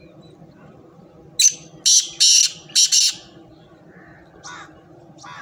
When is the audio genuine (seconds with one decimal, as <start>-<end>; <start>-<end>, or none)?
0.0-5.4